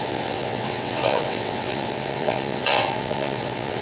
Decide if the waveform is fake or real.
fake